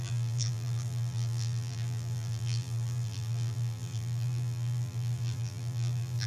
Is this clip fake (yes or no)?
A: yes